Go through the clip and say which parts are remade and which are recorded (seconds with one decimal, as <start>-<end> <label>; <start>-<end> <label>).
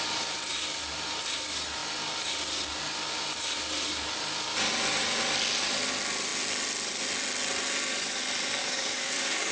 0.0-8.6 recorded; 8.6-9.5 remade